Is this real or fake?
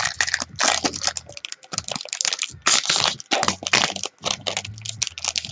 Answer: real